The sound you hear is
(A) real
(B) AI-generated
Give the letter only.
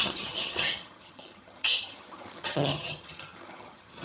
B